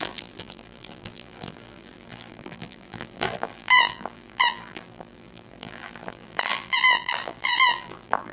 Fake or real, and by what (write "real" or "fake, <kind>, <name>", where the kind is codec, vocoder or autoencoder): fake, vocoder, BigVGAN v2